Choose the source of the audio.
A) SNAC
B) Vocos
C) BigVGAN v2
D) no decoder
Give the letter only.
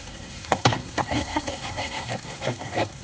A